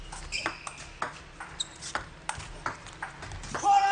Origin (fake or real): real